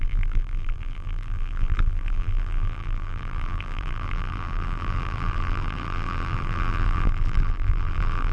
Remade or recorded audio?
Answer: remade